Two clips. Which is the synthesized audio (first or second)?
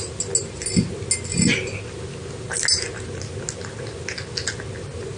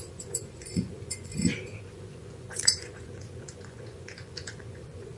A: second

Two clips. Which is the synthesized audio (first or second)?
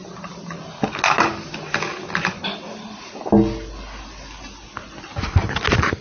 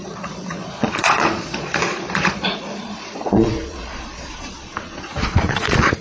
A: second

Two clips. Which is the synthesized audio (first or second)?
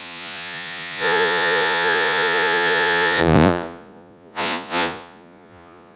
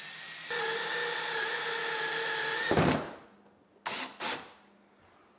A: first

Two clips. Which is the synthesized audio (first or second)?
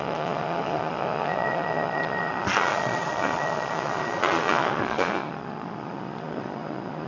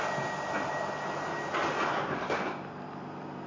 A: first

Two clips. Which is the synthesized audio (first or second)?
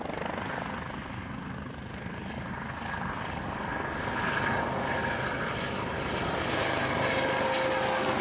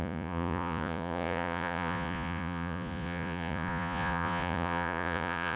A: second